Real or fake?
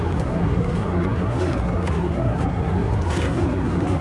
fake